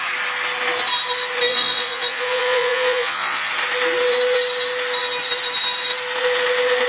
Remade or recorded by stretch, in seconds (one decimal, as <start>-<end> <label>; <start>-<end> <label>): 0.0-1.5 recorded; 1.5-3.5 remade; 3.5-6.9 recorded